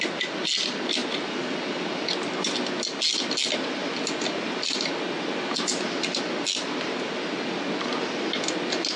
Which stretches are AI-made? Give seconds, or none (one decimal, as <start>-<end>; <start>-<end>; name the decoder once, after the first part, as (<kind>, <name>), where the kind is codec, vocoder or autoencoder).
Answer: none